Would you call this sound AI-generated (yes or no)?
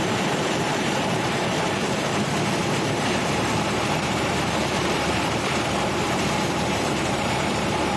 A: yes